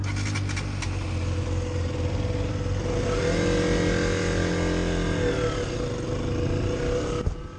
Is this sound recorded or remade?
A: recorded